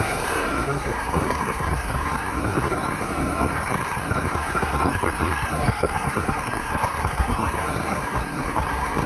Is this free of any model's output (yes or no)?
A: no